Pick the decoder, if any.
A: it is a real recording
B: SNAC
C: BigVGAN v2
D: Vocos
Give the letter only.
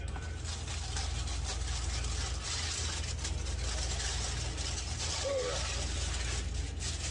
A